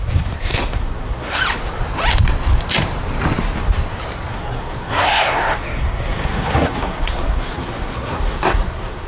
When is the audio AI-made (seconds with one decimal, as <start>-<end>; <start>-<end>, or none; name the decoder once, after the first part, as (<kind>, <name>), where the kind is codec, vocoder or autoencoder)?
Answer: 0.0-1.4 (codec, SNAC); 4.3-9.1